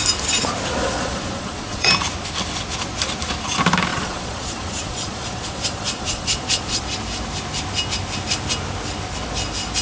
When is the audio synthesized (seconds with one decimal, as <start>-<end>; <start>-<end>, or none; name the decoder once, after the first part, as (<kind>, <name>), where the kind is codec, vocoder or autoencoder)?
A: 0.8-1.9 (vocoder, Vocos); 3.9-6.8